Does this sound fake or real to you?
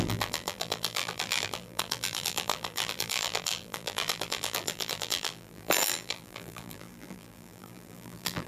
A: fake